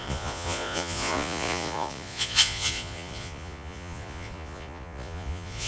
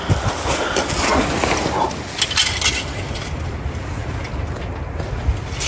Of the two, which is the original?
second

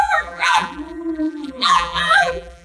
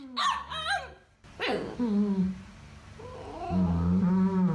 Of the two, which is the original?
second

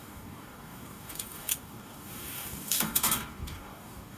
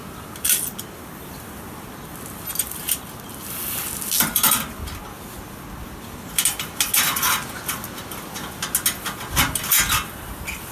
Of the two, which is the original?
second